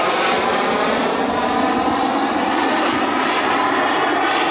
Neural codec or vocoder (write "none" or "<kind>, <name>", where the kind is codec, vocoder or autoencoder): none